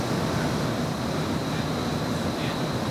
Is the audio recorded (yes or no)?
yes